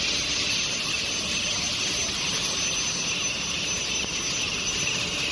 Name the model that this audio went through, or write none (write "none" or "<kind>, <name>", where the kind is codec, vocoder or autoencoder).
none